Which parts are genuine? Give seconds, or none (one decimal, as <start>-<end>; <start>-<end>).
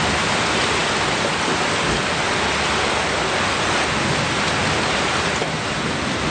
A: 0.0-6.3